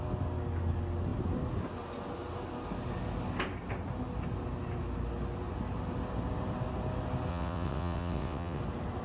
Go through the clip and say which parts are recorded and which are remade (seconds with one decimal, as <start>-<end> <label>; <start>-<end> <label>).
0.0-7.3 recorded; 7.3-8.6 remade; 8.6-9.0 recorded

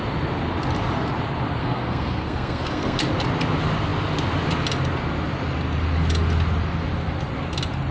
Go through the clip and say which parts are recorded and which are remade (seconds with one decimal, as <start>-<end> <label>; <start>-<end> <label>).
0.0-1.6 recorded; 1.6-3.0 remade; 3.0-7.9 recorded

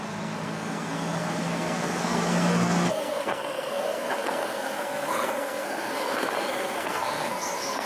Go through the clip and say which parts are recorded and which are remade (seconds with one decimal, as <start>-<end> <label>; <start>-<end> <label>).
0.0-7.9 remade

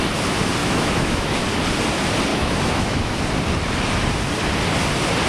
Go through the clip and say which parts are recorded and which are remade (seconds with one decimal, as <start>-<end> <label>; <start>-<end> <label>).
0.0-0.6 recorded; 0.6-1.3 remade; 1.3-2.3 recorded; 2.3-3.2 remade; 3.2-5.3 recorded

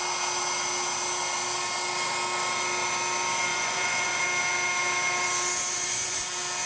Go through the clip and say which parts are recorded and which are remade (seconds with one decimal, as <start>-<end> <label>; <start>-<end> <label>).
0.0-3.5 recorded; 3.5-4.2 remade; 4.2-5.7 recorded; 5.7-6.3 remade; 6.3-6.7 recorded

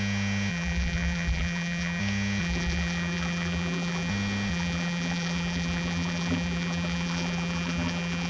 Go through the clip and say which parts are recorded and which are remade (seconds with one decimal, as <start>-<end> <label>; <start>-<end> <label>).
0.0-0.5 recorded; 0.5-2.0 remade; 2.0-2.4 recorded; 2.4-4.1 remade; 4.1-4.5 recorded; 4.5-8.3 remade

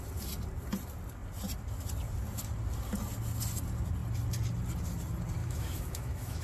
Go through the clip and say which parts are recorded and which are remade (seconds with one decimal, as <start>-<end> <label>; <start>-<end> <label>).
0.0-5.4 recorded; 5.4-6.4 remade

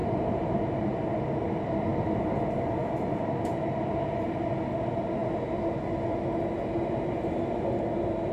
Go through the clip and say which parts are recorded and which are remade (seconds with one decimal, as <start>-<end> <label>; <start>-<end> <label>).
0.0-8.3 recorded